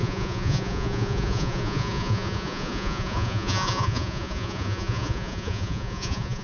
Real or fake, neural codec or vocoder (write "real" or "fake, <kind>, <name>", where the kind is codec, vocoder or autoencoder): fake, vocoder, Vocos